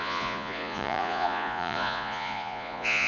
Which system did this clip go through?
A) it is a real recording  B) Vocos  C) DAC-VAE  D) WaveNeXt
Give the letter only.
B